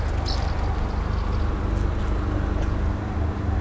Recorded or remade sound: recorded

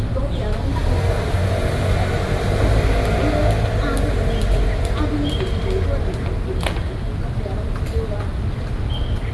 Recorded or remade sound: recorded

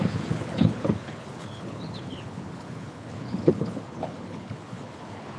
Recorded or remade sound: remade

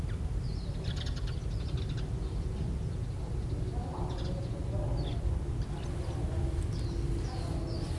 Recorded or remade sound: recorded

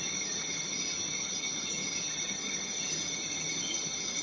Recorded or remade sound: remade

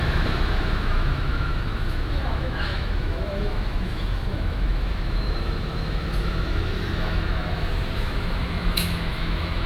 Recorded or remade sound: remade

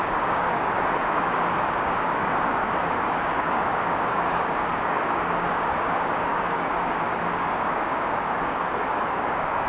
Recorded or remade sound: remade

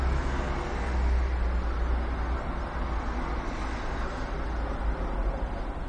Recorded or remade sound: recorded